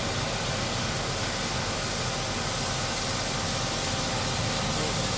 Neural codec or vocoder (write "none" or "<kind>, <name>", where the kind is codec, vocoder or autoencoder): none